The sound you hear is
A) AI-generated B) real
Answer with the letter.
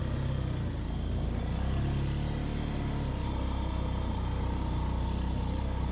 B